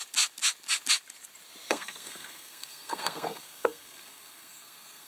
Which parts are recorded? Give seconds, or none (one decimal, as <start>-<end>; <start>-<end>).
0.0-1.7